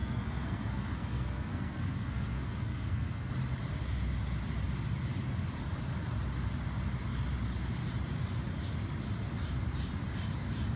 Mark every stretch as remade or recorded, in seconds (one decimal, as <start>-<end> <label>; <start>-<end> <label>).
0.0-3.3 remade; 3.3-10.8 recorded